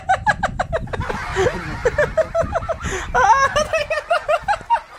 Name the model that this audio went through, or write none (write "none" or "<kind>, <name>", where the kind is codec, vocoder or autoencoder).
none